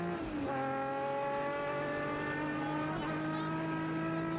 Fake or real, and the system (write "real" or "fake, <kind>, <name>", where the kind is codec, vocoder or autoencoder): real